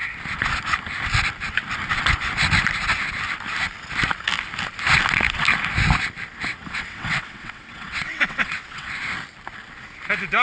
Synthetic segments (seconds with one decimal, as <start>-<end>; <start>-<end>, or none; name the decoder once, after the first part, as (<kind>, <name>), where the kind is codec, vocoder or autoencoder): 6.5-8.9 (vocoder, WaveNeXt)